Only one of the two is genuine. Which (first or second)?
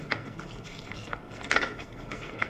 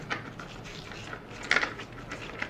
second